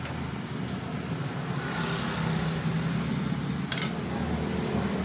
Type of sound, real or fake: real